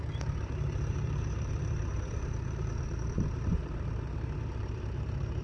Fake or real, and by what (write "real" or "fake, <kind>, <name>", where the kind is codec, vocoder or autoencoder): fake, vocoder, BigVGAN v2